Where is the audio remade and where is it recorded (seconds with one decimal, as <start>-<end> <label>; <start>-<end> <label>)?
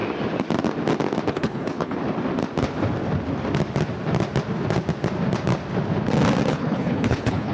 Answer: 0.0-1.3 recorded; 1.3-2.0 remade; 2.0-6.5 recorded; 6.5-7.5 remade